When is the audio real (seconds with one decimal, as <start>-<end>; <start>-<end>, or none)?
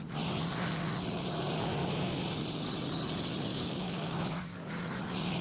0.0-1.8; 2.3-3.5; 4.7-5.4